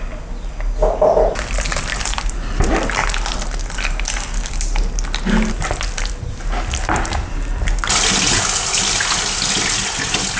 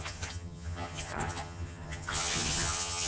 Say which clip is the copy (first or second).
second